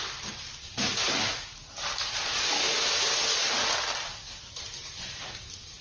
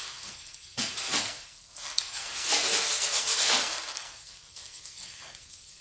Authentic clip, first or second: first